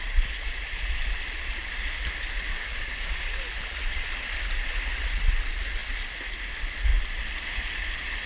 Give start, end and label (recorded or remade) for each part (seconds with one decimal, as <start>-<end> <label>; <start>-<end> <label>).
0.0-2.5 recorded; 2.5-3.3 remade; 3.3-8.3 recorded